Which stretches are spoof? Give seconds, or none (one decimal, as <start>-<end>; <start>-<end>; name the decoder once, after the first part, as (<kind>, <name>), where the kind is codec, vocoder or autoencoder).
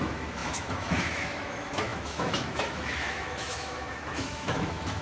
0.0-5.0 (autoencoder, DAC-VAE)